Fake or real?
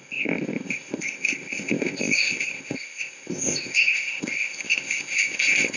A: fake